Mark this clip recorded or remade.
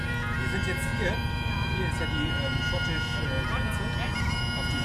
remade